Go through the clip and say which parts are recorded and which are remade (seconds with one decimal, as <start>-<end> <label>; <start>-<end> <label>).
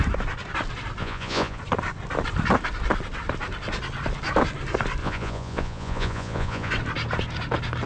0.0-1.0 recorded; 1.0-1.6 remade; 1.6-5.0 recorded; 5.0-6.7 remade; 6.7-7.9 recorded